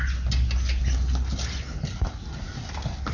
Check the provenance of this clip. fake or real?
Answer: real